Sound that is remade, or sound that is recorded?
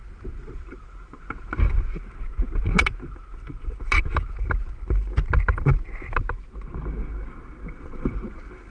recorded